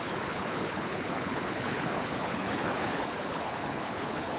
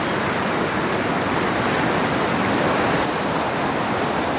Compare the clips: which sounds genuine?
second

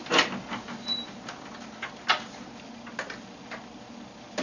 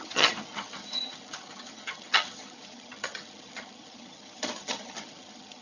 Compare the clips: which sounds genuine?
first